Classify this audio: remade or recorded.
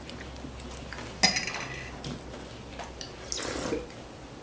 recorded